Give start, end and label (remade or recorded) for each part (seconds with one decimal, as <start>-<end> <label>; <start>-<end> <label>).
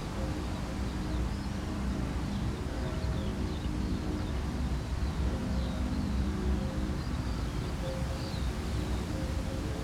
0.0-1.7 recorded; 1.7-5.4 remade; 5.4-7.4 recorded; 7.4-9.8 remade